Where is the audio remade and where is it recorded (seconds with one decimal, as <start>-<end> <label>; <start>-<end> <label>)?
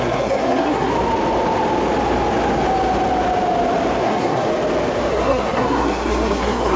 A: 0.0-0.9 remade; 0.9-4.0 recorded; 4.0-4.5 remade; 4.5-5.1 recorded; 5.1-6.8 remade